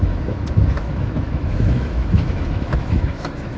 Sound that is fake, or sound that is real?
fake